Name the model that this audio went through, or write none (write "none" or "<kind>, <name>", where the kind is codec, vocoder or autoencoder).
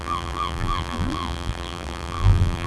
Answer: vocoder, BigVGAN v2